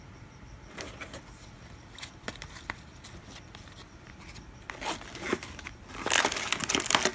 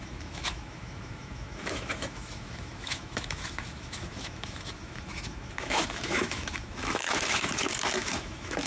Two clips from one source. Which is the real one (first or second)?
first